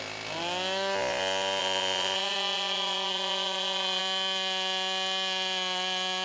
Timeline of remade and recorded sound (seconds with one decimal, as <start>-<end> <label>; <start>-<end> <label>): 0.0-1.6 recorded; 1.6-4.0 remade; 4.0-6.2 recorded